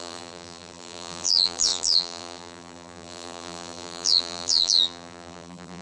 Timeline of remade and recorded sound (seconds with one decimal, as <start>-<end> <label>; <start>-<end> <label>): 0.0-5.8 remade